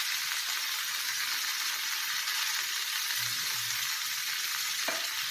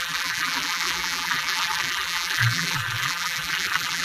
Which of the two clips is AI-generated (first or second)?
second